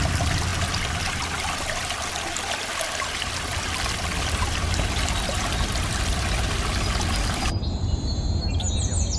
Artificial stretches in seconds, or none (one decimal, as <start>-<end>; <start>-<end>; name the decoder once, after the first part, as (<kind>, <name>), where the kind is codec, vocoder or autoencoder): none